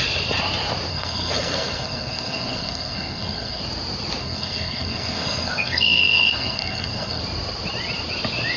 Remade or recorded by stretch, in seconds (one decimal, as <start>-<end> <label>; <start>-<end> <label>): 0.0-0.9 recorded; 0.9-3.6 remade; 3.6-4.2 recorded; 4.2-7.2 remade; 7.2-8.6 recorded